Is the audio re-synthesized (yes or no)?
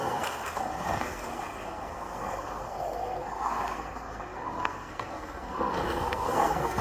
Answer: yes